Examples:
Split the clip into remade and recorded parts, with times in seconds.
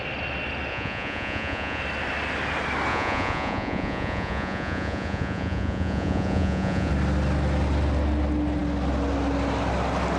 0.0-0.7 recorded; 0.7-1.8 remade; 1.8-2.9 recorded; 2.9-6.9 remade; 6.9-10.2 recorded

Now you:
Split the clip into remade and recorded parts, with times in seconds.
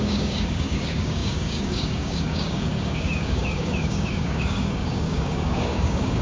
0.0-6.2 remade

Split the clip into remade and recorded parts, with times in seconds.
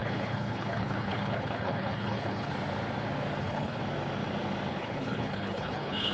0.0-2.5 remade; 2.5-3.4 recorded; 3.4-3.8 remade; 3.8-4.7 recorded; 4.7-6.1 remade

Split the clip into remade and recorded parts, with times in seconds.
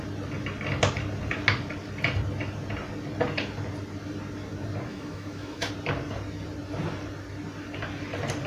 0.0-4.9 recorded; 4.9-5.7 remade; 5.7-8.5 recorded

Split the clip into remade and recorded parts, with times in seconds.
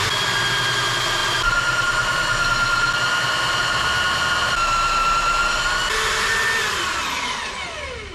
0.0-8.1 recorded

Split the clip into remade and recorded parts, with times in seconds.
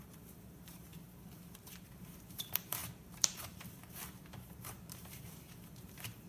0.0-6.3 remade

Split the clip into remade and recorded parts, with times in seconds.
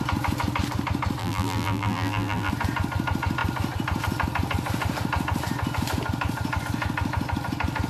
0.0-1.2 recorded; 1.2-2.5 remade; 2.5-7.9 recorded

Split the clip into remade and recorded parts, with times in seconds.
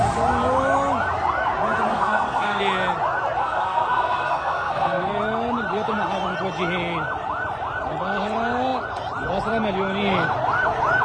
0.0-1.9 recorded; 1.9-2.6 remade; 2.6-3.4 recorded; 3.4-5.2 remade; 5.2-11.0 recorded